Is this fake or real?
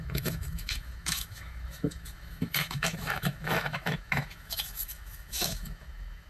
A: fake